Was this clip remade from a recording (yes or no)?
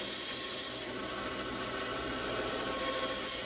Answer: no